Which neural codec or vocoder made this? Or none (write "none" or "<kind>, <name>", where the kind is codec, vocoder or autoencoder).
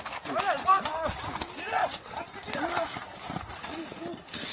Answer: none